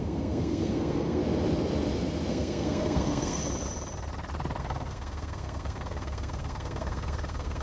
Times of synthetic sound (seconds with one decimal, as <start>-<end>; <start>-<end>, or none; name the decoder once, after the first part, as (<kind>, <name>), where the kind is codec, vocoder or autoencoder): 0.0-1.2 (codec, SNAC); 2.3-3.4; 4.6-7.6